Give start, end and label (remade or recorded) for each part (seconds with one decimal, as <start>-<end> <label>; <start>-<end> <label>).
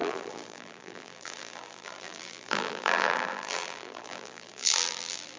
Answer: 0.0-5.4 remade